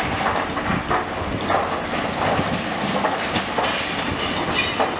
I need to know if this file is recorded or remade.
recorded